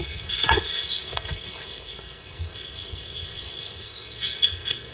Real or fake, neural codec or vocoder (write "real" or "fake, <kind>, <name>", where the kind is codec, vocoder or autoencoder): fake, codec, SNAC